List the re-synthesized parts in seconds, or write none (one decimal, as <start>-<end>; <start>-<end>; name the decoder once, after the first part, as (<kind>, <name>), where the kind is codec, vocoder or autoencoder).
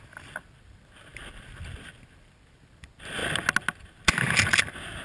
none